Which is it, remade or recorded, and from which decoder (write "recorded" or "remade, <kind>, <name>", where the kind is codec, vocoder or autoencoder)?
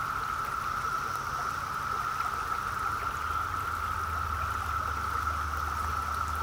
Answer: recorded